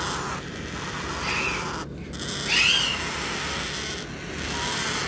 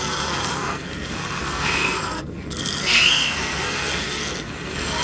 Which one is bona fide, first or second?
first